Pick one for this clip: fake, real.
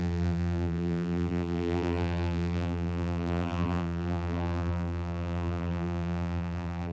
fake